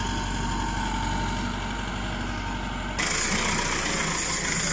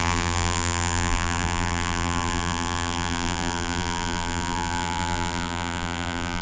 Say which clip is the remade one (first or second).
second